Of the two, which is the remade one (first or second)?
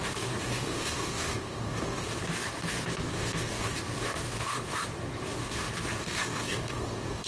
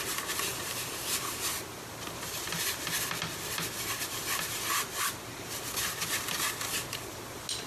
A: first